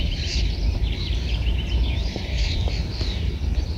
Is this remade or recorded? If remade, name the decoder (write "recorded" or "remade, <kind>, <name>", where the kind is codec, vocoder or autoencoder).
remade, vocoder, BigVGAN v2